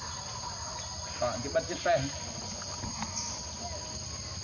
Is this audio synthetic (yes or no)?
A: no